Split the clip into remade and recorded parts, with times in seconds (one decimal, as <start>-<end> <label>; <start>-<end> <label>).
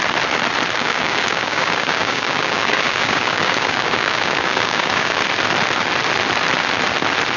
0.0-0.8 recorded; 0.8-5.2 remade; 5.2-7.4 recorded